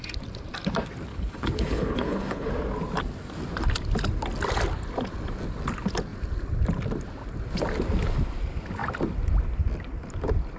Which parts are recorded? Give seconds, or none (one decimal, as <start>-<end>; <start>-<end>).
0.0-1.1; 2.5-10.6